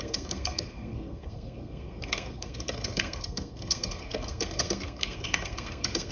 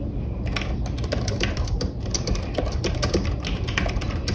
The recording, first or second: second